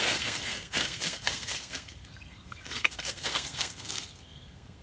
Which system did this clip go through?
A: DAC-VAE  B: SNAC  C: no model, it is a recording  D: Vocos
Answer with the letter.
B